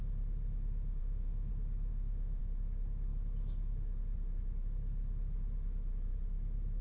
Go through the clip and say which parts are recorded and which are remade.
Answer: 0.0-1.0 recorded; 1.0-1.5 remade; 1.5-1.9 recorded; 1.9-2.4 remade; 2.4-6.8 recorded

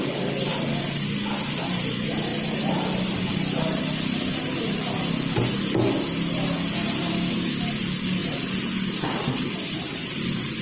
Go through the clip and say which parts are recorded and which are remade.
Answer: 0.0-10.6 recorded

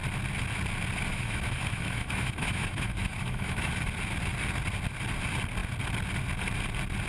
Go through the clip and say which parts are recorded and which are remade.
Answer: 0.0-1.1 recorded; 1.1-3.7 remade; 3.7-7.1 recorded

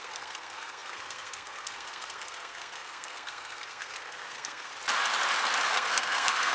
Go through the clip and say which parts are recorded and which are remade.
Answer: 0.0-4.7 remade; 4.7-5.7 recorded; 5.7-6.5 remade

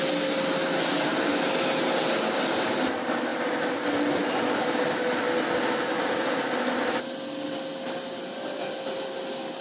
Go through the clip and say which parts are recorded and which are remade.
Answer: 0.0-9.6 recorded

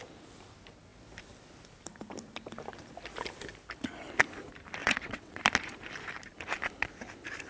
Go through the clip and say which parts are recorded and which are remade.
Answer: 0.0-4.8 recorded; 4.8-5.4 remade; 5.4-7.5 recorded

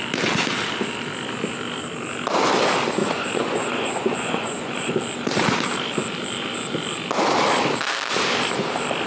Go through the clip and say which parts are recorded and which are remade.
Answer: 0.0-3.0 recorded; 3.0-4.9 remade; 4.9-9.1 recorded